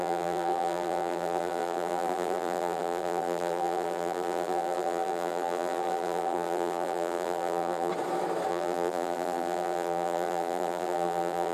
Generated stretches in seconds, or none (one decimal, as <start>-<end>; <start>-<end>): 0.0-7.9; 8.5-11.5